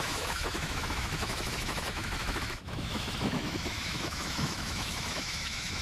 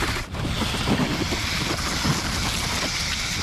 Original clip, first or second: second